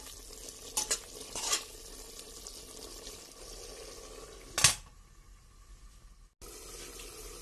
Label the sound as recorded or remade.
recorded